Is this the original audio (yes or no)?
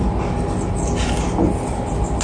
yes